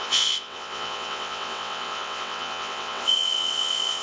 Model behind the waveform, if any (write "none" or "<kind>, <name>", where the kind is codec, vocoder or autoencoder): vocoder, WaveNeXt